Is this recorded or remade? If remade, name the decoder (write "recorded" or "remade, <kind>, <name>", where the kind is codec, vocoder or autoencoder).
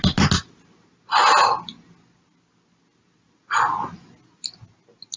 recorded